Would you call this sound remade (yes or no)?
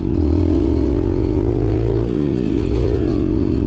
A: yes